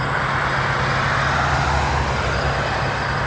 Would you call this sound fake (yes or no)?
no